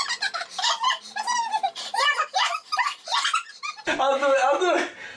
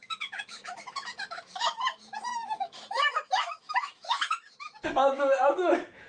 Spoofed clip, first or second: second